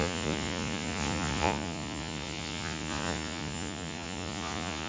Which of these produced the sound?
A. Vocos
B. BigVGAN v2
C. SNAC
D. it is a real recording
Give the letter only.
A